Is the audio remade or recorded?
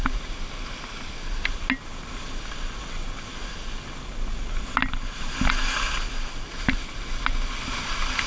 recorded